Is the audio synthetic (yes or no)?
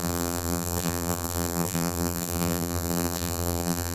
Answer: yes